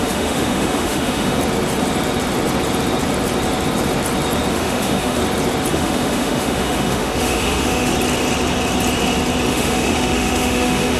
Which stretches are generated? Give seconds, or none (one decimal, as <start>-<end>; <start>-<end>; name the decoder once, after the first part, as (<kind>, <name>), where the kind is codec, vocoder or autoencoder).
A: 0.0-1.4 (autoencoder, DAC-VAE); 4.5-5.2; 5.7-7.9; 9.5-11.0